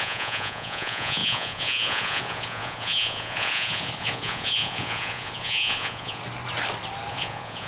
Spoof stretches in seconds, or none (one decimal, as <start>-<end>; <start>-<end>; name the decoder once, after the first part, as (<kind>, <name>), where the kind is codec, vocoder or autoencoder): 0.0-6.2 (vocoder, Vocos); 7.1-7.7